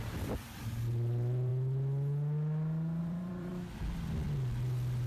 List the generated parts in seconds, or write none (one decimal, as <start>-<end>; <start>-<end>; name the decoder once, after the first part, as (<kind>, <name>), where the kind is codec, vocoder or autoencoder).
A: 0.0-1.5 (vocoder, BigVGAN v2); 3.0-3.5